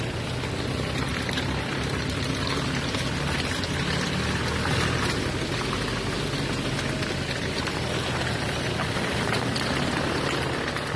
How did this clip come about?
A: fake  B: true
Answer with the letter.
B